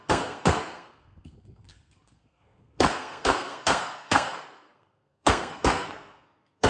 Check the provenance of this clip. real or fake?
fake